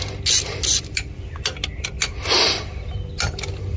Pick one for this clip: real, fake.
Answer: real